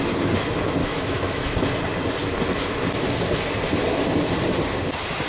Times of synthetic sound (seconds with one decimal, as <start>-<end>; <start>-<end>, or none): 0.8-1.6